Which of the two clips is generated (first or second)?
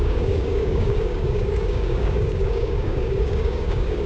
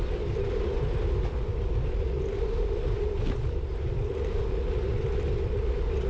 first